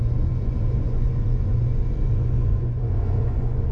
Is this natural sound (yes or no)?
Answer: no